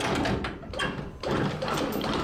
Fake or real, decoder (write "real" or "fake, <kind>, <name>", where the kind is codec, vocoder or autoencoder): real